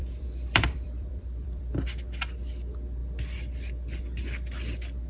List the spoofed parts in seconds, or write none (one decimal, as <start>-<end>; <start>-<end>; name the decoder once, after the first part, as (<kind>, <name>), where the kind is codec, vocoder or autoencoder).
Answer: 0.0-1.7 (vocoder, BigVGAN v2)